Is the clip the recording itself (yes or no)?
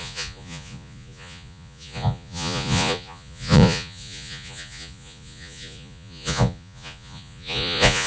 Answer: no